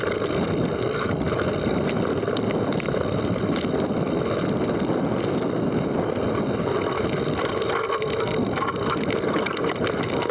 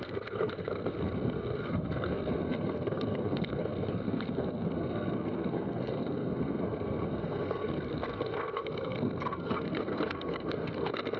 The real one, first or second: first